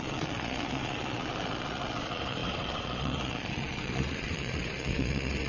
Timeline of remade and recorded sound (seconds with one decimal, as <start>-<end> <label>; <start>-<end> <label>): 0.0-5.5 remade